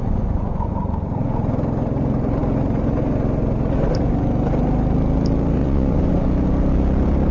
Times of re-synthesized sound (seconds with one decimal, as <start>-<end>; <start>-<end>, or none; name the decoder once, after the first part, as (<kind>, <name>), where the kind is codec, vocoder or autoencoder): 0.0-0.7 (vocoder, Vocos); 5.6-6.2